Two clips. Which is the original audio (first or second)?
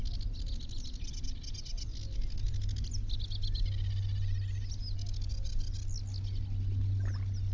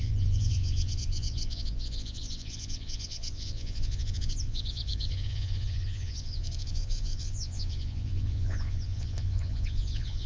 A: first